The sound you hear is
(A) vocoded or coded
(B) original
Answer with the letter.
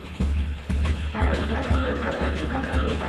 A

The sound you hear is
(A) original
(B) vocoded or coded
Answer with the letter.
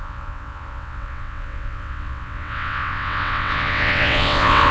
B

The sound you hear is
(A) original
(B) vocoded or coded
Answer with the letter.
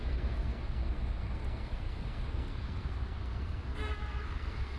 B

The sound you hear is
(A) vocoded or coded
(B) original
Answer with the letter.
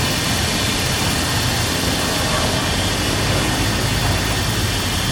B